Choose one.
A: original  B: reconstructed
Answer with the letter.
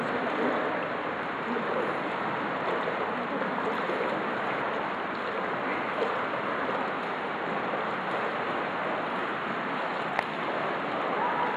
A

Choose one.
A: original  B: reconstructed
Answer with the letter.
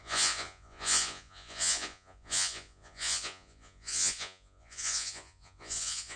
B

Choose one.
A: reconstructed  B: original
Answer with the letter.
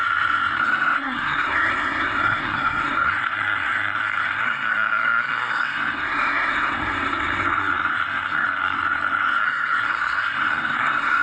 A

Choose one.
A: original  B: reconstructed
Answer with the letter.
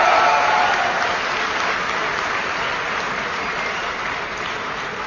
A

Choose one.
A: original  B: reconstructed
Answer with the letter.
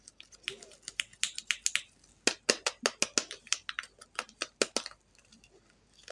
A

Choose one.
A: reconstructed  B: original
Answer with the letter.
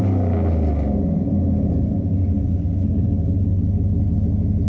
B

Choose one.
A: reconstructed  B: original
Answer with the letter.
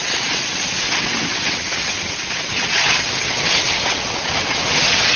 A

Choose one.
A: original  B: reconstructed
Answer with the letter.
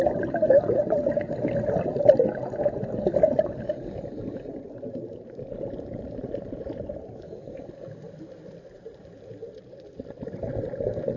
A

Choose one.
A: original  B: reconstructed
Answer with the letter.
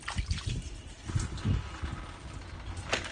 A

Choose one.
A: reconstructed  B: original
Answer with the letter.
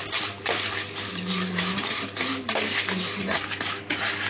A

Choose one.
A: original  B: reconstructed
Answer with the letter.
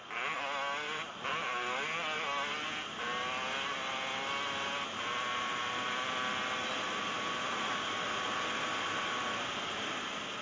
A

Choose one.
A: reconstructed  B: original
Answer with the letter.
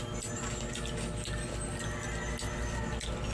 B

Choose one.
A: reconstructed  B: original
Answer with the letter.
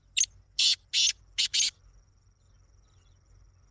B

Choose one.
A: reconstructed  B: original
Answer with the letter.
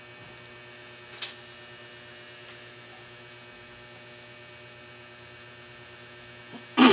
B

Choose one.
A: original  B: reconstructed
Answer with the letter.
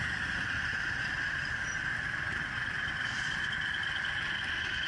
A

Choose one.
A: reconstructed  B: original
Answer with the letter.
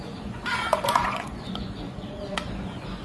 A